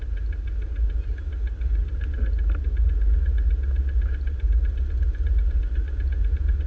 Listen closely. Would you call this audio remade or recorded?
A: recorded